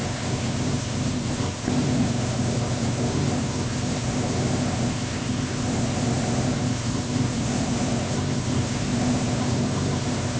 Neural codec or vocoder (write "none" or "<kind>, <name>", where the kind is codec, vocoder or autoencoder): codec, SNAC